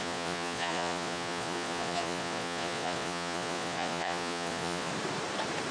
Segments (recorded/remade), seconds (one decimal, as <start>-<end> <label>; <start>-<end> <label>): 0.0-4.9 remade; 4.9-5.7 recorded